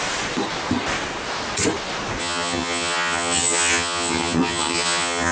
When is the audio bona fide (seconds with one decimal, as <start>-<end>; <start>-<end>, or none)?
0.0-2.2